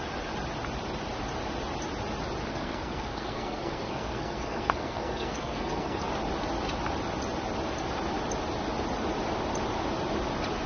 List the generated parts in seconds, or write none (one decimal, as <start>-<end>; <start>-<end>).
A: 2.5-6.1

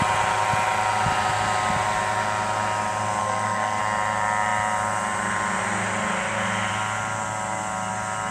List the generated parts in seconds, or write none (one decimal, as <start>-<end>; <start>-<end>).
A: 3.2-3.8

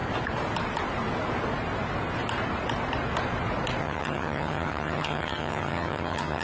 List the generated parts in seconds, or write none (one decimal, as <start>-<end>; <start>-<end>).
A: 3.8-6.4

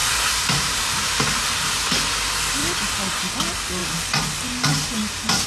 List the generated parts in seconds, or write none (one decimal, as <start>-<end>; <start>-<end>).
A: 0.0-1.4; 2.6-3.3

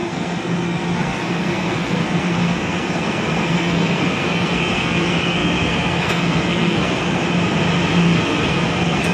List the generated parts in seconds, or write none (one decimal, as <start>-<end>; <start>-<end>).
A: 0.0-7.2; 8.0-9.1

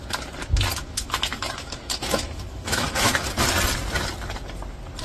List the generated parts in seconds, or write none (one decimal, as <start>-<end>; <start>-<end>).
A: 0.7-3.3